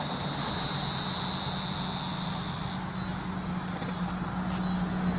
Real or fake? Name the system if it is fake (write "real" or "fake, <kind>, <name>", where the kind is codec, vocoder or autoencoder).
real